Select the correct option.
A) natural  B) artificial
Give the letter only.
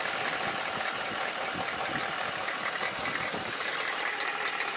A